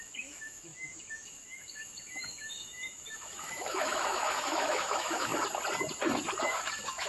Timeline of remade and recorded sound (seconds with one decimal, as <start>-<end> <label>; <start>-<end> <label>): 0.0-5.3 remade; 5.3-6.4 recorded; 6.4-7.1 remade